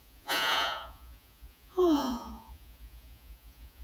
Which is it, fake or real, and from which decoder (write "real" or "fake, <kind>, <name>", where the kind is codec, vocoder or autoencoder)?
fake, vocoder, Vocos